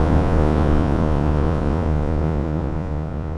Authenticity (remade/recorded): remade